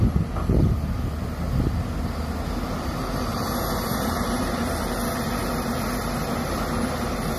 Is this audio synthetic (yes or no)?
no